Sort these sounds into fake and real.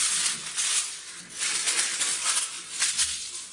real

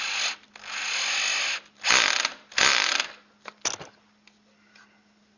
real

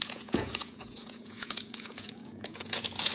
fake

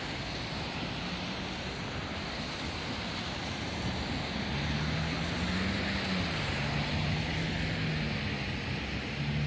real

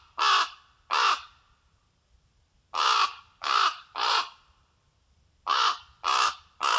real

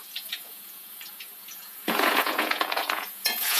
fake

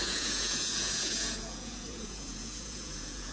fake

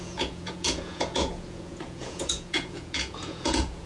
fake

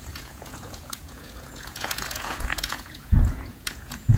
fake